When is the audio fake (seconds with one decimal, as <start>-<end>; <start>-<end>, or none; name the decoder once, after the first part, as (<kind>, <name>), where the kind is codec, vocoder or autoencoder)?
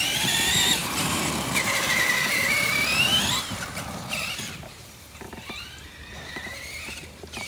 0.0-7.5 (vocoder, BigVGAN v2)